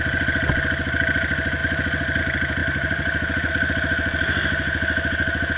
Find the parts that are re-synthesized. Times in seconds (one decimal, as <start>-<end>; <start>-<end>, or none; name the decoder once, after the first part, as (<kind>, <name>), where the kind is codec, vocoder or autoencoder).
2.6-3.5 (vocoder, BigVGAN v2)